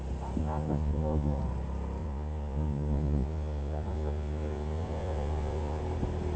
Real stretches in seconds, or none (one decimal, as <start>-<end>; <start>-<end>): 0.0-0.4; 1.4-2.0; 5.8-6.4